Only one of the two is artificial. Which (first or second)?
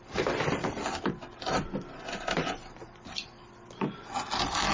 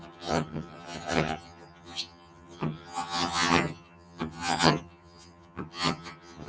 second